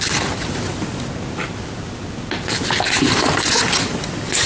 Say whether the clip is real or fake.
real